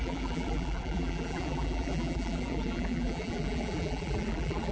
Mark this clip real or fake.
fake